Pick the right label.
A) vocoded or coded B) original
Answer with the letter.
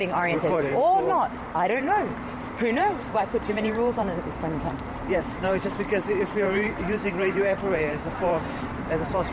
A